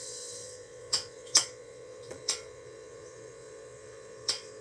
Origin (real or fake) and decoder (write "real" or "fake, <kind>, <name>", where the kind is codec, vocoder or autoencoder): fake, vocoder, Vocos